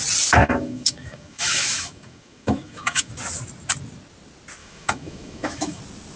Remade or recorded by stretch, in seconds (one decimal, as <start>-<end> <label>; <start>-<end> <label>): 0.0-0.4 recorded; 0.4-3.1 remade; 3.1-4.6 recorded; 4.6-5.8 remade; 5.8-6.2 recorded